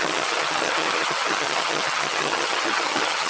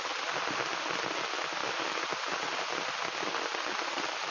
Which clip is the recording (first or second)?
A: second